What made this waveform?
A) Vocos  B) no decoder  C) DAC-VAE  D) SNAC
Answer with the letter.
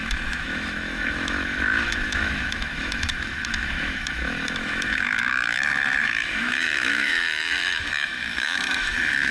C